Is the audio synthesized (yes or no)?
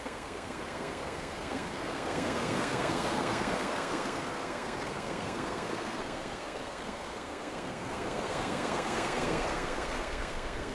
yes